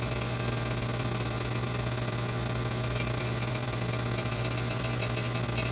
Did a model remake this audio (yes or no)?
no